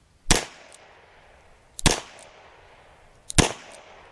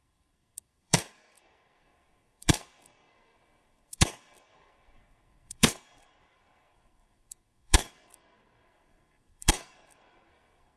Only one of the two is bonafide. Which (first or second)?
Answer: first